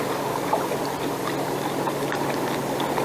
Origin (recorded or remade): recorded